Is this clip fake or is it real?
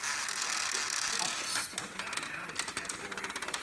real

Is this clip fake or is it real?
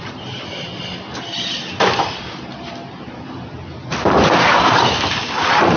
fake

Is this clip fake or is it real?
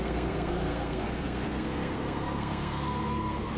fake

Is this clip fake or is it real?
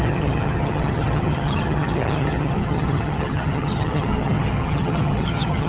fake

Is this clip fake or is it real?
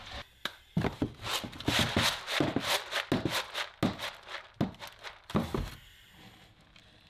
real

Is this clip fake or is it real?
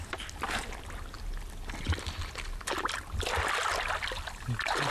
real